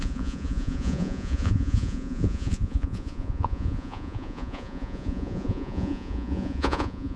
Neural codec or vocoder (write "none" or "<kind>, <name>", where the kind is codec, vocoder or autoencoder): vocoder, Vocos